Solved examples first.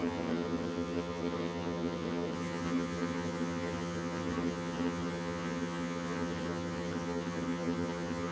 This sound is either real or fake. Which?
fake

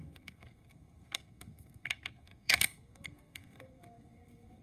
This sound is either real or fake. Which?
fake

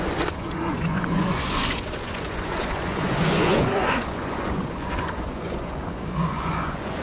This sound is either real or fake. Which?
fake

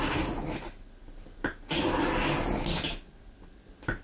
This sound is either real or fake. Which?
real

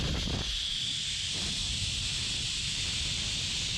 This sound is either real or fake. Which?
real